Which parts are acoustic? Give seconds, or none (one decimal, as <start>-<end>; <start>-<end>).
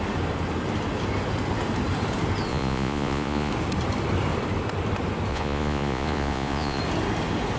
0.0-2.5; 3.5-5.3; 6.8-7.6